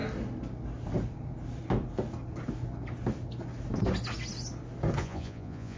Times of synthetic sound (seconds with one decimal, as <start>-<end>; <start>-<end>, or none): 5.0-5.8